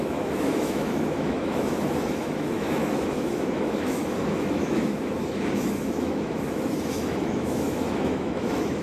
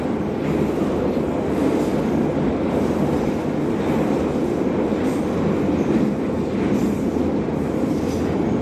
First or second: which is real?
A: second